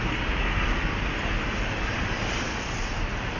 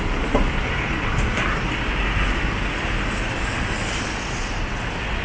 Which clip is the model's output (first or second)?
first